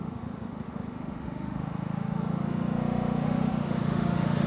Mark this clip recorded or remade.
remade